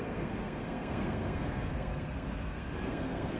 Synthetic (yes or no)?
yes